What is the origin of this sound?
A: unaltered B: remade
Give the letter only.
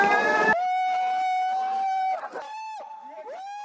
A